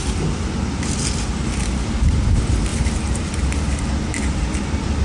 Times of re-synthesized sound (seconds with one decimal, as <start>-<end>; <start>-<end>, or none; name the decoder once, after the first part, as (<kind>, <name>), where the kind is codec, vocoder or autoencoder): 2.7-4.6 (vocoder, BigVGAN v2)